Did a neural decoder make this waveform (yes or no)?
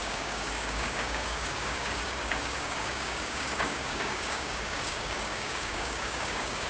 yes